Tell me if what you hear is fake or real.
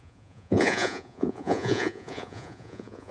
fake